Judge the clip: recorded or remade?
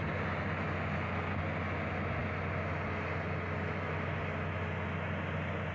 recorded